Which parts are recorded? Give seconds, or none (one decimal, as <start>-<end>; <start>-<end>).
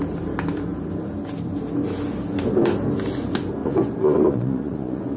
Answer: 0.0-3.6